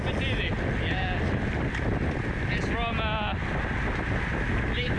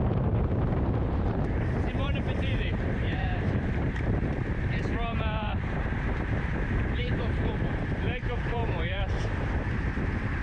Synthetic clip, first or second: second